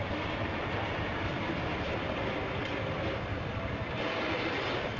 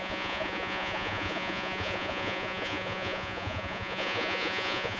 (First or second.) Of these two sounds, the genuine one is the first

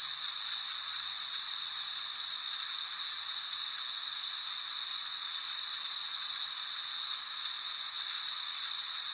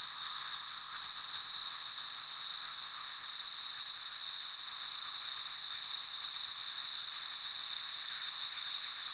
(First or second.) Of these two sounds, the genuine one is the first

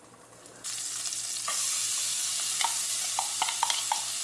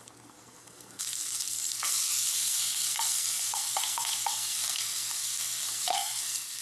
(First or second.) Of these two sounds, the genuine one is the first